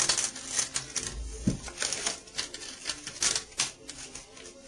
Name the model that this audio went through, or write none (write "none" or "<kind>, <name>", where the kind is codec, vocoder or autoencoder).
none